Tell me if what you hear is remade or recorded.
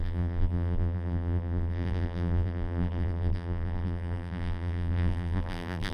remade